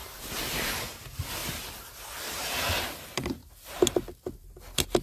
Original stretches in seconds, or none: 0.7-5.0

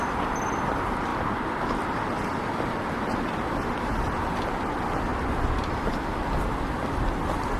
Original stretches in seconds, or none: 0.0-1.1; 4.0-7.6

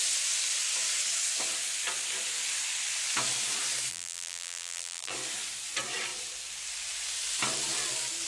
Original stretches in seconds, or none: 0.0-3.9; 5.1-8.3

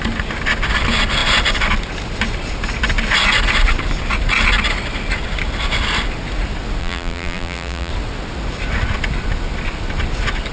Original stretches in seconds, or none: 0.0-6.8; 7.9-10.5